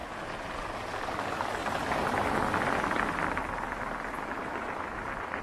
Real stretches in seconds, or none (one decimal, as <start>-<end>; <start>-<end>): 0.0-4.4; 5.0-5.4